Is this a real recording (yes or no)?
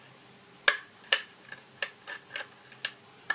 yes